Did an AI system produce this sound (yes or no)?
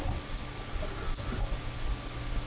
no